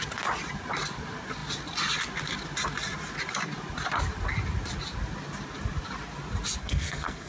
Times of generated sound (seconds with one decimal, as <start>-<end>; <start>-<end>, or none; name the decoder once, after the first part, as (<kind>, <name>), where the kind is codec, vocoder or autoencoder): 6.6-7.3 (codec, SNAC)